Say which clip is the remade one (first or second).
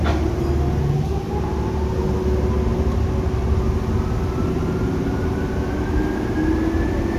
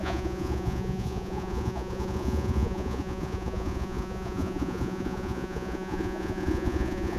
second